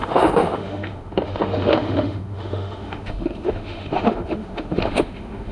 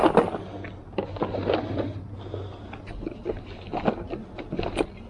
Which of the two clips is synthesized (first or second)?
first